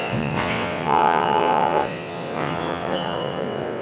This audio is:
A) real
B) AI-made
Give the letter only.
B